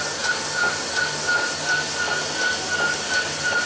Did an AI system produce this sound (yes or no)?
no